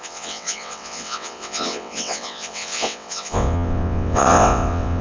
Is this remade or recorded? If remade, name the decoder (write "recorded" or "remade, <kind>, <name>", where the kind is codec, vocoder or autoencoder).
remade, vocoder, WaveNeXt